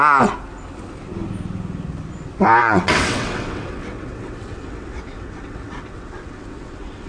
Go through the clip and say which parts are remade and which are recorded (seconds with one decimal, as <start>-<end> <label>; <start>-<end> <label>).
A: 0.0-2.6 recorded; 2.6-7.1 remade